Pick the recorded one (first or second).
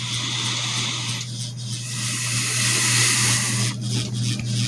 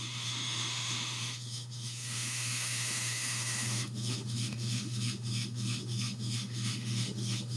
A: first